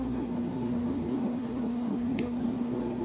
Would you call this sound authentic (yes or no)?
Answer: no